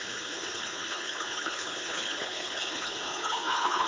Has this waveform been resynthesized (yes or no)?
yes